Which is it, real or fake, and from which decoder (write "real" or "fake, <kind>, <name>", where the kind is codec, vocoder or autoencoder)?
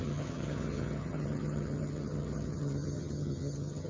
fake, vocoder, HiFi-GAN